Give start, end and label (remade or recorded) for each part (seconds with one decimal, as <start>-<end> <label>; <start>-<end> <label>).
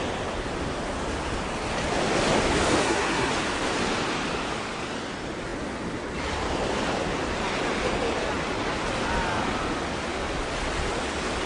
0.0-2.8 recorded; 2.8-3.3 remade; 3.3-11.5 recorded